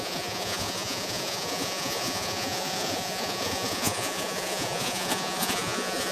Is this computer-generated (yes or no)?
yes